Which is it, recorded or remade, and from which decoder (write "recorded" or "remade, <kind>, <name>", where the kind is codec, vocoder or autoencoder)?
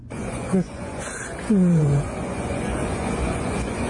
remade, vocoder, Vocos